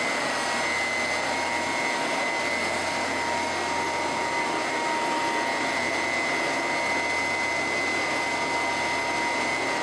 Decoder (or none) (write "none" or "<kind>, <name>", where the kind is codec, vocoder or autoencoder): none